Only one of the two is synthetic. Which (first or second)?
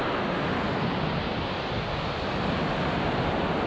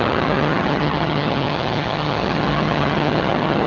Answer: second